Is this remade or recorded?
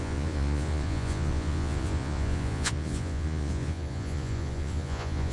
remade